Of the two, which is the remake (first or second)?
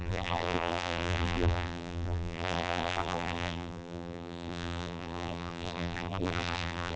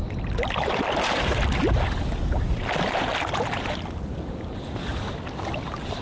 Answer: first